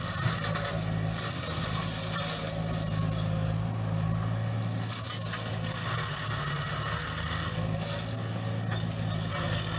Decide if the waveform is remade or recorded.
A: recorded